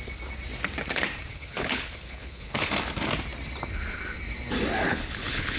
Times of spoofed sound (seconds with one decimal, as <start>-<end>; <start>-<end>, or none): 1.3-2.7; 4.9-5.6